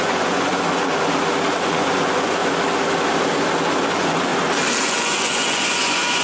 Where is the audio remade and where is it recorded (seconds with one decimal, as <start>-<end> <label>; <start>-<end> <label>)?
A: 0.0-0.9 remade; 0.9-1.5 recorded; 1.5-2.4 remade; 2.4-3.9 recorded; 3.9-4.3 remade; 4.3-4.8 recorded; 4.8-6.2 remade